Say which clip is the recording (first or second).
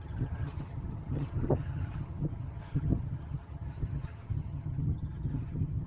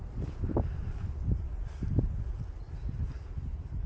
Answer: second